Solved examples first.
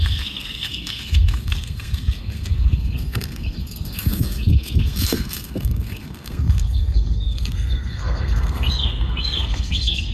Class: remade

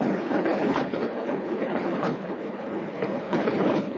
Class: remade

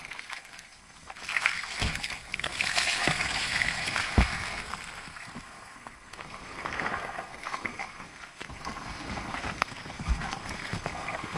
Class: remade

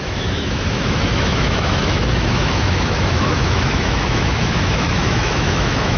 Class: remade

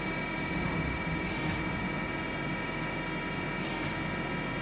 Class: recorded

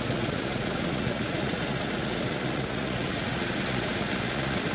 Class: remade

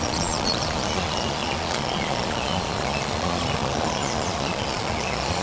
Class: remade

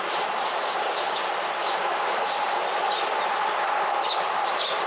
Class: recorded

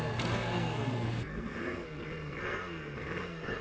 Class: remade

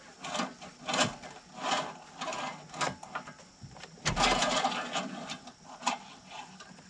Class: recorded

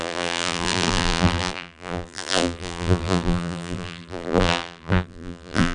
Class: remade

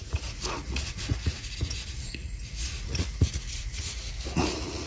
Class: remade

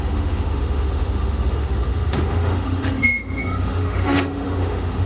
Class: remade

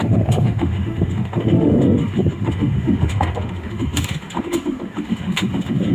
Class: remade